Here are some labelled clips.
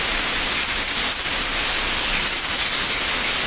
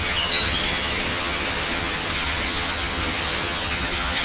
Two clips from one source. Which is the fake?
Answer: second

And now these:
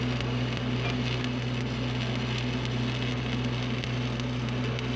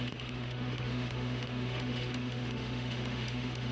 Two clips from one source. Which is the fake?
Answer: second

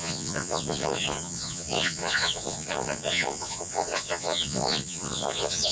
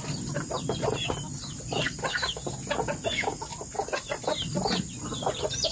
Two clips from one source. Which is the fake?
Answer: first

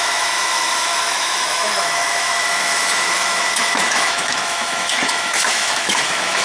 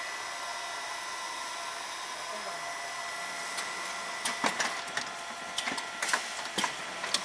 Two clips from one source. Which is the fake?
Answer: first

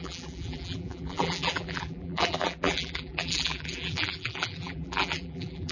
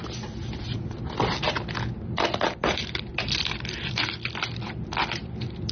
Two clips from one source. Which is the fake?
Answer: first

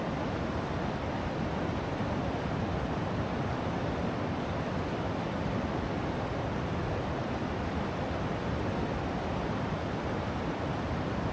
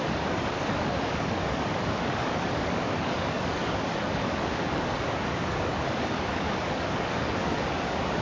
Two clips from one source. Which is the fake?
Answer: second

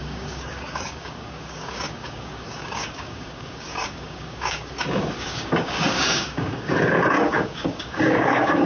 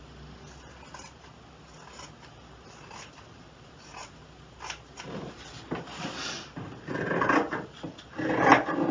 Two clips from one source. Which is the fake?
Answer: first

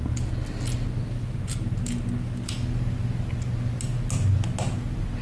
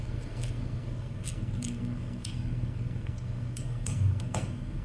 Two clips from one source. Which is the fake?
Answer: second